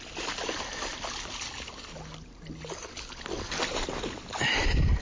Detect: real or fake real